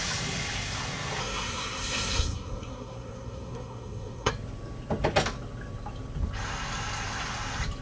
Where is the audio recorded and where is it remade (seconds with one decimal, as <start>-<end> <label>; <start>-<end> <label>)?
0.0-1.2 recorded; 1.2-4.3 remade; 4.3-7.8 recorded